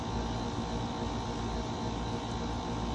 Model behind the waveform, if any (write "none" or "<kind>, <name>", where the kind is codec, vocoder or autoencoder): none